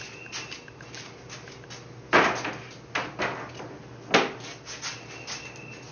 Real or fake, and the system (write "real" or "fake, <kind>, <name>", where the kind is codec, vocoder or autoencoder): real